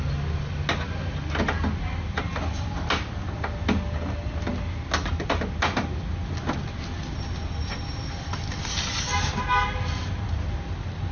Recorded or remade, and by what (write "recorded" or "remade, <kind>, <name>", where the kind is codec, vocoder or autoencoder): recorded